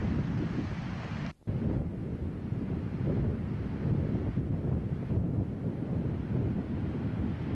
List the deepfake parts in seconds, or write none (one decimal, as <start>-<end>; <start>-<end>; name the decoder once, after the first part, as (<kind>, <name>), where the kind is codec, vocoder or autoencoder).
0.0-0.6 (vocoder, BigVGAN v2)